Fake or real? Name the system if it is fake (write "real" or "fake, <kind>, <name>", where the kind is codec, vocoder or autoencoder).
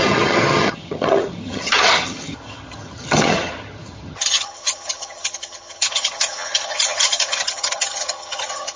fake, vocoder, HiFi-GAN